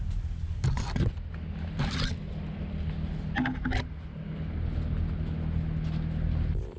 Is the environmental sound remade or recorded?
recorded